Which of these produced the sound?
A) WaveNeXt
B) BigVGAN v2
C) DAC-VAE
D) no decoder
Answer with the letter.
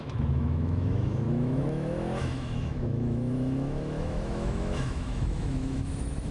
C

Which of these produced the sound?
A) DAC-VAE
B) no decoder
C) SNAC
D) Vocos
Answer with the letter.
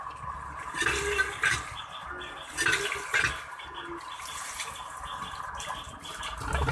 B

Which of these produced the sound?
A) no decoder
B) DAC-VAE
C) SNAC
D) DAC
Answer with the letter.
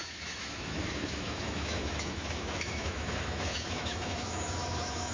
B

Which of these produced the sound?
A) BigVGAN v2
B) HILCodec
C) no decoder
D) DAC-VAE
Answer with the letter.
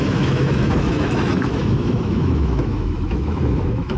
D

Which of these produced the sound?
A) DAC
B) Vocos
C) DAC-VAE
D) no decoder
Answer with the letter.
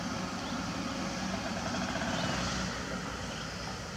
D